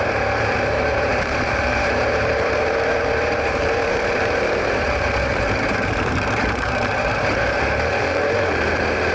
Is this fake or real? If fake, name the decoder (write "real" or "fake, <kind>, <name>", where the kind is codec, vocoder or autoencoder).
fake, vocoder, BigVGAN v2